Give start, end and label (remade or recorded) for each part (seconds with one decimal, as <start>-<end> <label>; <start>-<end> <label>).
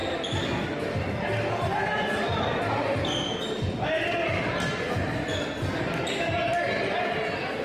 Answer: 0.0-0.6 remade; 0.6-7.6 recorded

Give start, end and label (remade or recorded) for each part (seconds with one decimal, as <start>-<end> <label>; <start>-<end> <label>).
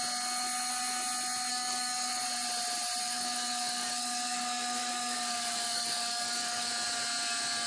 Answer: 0.0-1.5 recorded; 1.5-2.1 remade; 2.1-3.0 recorded; 3.0-6.7 remade; 6.7-7.7 recorded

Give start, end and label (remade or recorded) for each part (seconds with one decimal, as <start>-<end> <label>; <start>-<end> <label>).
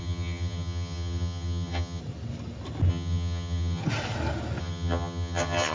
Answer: 0.0-2.0 remade; 2.0-2.9 recorded; 2.9-3.8 remade; 3.8-4.6 recorded; 4.6-5.7 remade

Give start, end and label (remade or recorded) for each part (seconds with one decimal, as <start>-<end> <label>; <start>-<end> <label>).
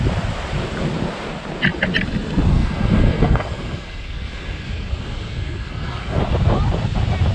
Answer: 0.0-2.5 recorded; 2.5-6.2 remade; 6.2-7.3 recorded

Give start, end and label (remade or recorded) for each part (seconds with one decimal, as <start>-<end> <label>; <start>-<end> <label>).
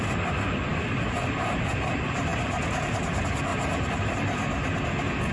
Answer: 0.0-5.3 recorded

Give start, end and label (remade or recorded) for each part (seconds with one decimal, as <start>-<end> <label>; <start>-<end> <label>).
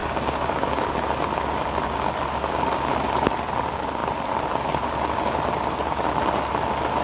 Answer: 0.0-0.9 remade; 0.9-7.0 recorded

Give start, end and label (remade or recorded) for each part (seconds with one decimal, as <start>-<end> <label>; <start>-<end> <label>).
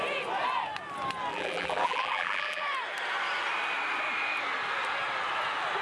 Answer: 0.0-1.3 recorded; 1.3-2.6 remade; 2.6-5.8 recorded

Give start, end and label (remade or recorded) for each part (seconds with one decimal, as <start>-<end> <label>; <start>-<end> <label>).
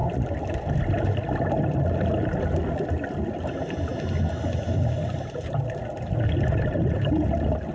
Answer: 0.0-7.7 recorded